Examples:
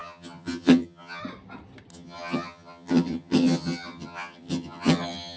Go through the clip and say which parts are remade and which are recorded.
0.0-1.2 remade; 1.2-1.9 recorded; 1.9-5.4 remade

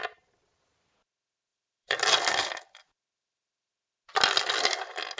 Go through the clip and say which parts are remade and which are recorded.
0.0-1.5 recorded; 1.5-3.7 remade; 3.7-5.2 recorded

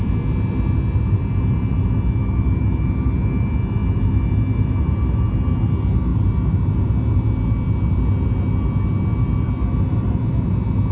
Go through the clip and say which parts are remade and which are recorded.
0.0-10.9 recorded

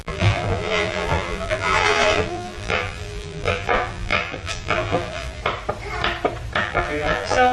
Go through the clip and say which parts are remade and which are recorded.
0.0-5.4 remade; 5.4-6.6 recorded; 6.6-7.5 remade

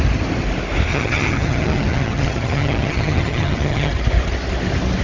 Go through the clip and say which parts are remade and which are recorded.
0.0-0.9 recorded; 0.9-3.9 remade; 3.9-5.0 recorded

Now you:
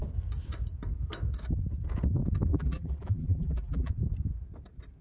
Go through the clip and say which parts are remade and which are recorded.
0.0-2.5 recorded; 2.5-3.9 remade; 3.9-5.0 recorded

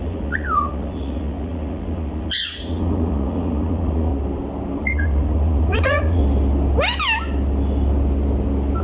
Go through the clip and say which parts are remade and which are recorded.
0.0-4.1 remade; 4.1-4.8 recorded; 4.8-6.2 remade; 6.2-8.8 recorded

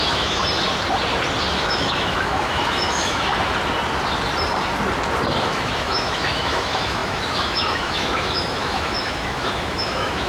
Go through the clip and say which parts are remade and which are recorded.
0.0-0.4 remade; 0.4-1.5 recorded; 1.5-3.3 remade; 3.3-5.4 recorded; 5.4-10.3 remade